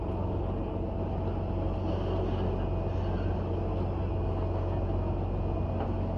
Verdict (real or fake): real